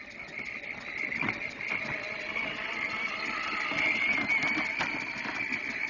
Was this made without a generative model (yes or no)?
yes